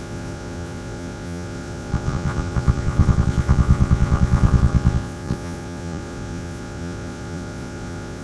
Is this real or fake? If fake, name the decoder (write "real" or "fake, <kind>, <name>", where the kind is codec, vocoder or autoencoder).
fake, vocoder, Vocos